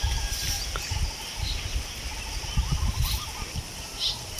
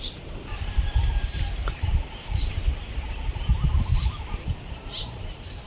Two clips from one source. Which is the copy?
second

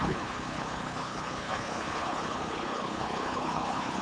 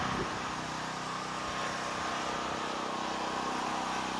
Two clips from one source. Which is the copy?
first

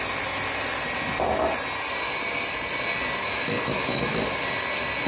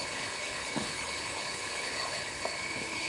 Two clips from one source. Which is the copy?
second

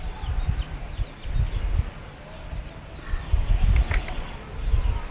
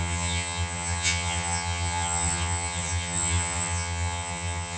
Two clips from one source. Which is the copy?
second